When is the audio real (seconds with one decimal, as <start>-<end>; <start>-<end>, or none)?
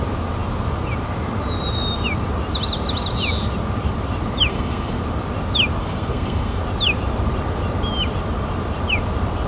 0.0-4.5; 5.0-5.8; 6.6-9.5